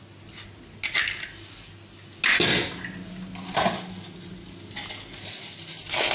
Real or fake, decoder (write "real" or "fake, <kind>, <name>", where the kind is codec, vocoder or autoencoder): real